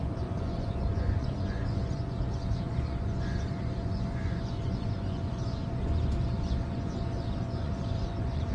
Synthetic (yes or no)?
yes